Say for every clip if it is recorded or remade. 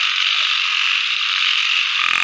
recorded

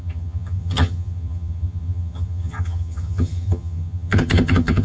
remade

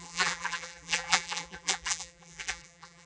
remade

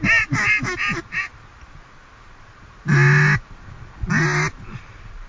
recorded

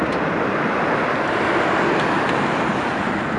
recorded